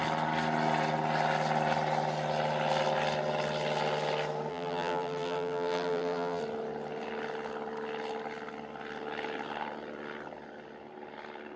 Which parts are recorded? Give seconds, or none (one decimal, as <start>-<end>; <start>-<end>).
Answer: 0.0-4.5; 6.4-11.6